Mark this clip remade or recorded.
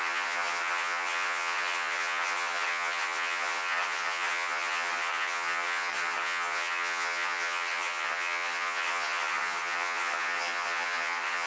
remade